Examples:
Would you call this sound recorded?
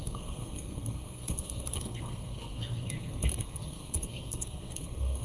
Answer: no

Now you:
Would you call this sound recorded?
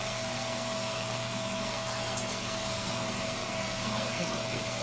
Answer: no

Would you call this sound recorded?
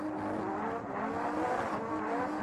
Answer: yes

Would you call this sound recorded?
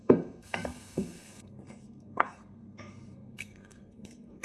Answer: no